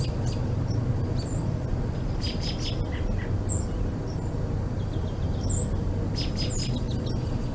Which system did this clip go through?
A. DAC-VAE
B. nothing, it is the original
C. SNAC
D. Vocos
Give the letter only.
B